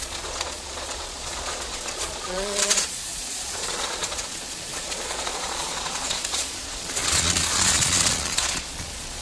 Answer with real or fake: fake